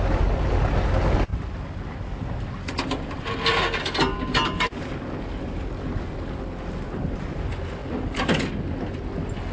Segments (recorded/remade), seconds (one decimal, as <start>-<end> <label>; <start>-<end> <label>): 0.0-9.5 recorded